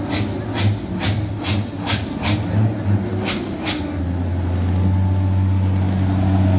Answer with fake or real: real